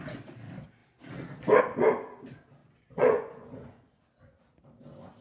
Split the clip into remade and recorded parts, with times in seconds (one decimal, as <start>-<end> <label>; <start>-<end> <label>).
0.0-2.6 recorded; 2.6-4.0 remade; 4.0-5.2 recorded